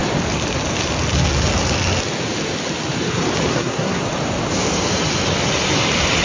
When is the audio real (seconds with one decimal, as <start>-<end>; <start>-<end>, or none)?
0.0-3.5; 4.0-6.2